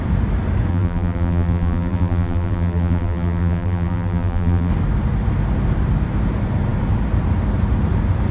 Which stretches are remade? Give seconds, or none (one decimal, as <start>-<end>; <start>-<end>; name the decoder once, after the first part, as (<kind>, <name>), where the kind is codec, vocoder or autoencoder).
0.7-4.7 (vocoder, BigVGAN v2)